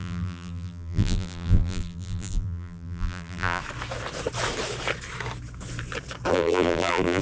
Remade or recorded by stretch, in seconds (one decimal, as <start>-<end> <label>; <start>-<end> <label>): 0.0-3.6 remade; 3.6-6.3 recorded; 6.3-7.2 remade